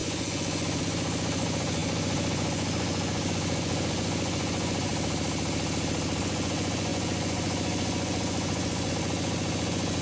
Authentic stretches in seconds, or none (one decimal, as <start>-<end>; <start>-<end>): 4.9-6.2